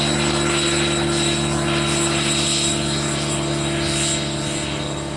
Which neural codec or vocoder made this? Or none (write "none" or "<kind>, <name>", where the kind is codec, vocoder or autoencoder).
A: none